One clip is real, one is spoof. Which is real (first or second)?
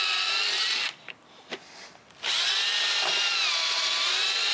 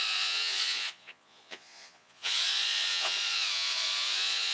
first